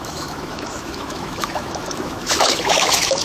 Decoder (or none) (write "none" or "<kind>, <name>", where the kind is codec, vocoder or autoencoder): autoencoder, DAC-VAE